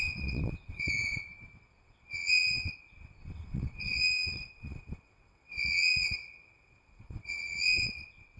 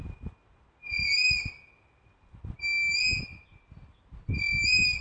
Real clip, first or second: second